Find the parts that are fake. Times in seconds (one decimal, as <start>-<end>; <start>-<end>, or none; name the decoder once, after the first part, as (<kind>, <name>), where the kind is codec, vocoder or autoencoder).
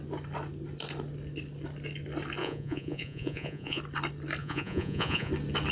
2.4-3.8 (vocoder, Vocos); 4.4-5.3